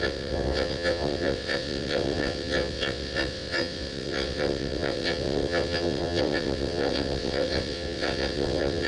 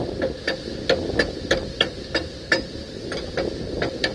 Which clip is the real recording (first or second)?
second